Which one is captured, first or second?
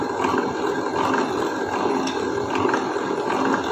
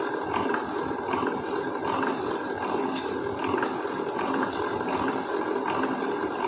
first